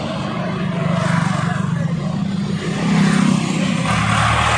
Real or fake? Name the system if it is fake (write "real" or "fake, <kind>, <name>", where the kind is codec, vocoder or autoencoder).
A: real